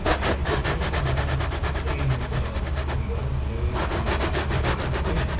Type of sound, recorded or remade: recorded